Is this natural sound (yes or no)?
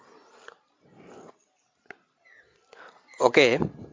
yes